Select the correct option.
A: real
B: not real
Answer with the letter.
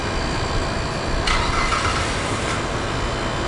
A